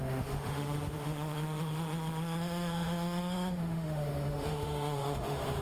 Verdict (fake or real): fake